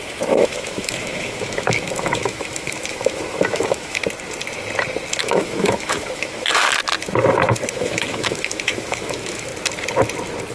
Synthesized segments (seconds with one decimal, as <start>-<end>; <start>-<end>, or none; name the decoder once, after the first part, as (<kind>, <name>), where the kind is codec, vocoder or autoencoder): 0.0-4.0 (autoencoder, DAC-VAE); 5.2-6.6; 7.7-9.5